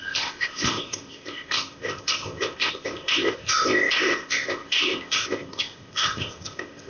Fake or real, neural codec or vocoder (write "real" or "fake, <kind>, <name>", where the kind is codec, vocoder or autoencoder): fake, codec, ZipCodec